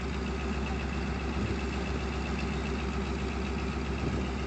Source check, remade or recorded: recorded